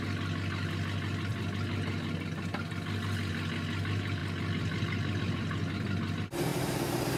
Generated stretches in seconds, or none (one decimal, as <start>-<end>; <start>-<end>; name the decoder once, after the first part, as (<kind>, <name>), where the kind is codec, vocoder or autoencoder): 6.5-7.2 (vocoder, BigVGAN v2)